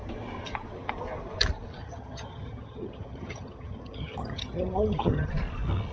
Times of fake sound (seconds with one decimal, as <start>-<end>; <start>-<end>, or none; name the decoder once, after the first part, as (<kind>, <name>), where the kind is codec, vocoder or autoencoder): 1.8-5.3 (vocoder, HiFi-GAN)